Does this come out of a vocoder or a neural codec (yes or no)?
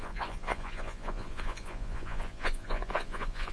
yes